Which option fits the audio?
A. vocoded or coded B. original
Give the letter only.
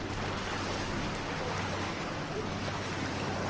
B